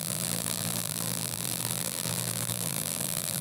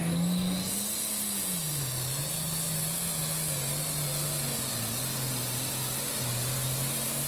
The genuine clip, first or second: second